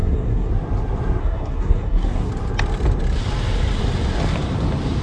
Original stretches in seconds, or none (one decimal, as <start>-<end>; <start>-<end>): 0.5-1.2; 2.3-5.0